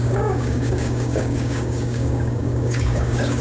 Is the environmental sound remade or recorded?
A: remade